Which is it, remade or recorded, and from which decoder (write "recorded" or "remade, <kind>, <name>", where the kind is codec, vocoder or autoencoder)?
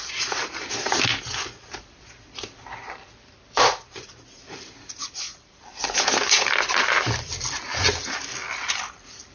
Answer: remade, vocoder, BigVGAN v2